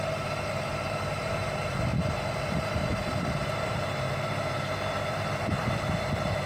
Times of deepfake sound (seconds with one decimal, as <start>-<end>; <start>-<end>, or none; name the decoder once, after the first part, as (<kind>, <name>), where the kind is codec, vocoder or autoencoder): 0.0-6.5 (vocoder, BigVGAN v2)